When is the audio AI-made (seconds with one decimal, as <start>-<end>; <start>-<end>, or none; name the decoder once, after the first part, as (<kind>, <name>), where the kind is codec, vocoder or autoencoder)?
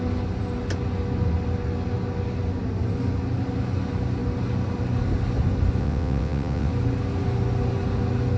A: 5.8-6.7 (vocoder, WaveNeXt)